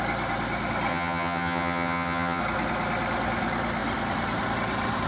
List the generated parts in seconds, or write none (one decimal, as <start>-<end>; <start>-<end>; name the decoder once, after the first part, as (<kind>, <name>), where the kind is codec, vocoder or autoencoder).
0.9-2.4 (vocoder, HiFi-GAN)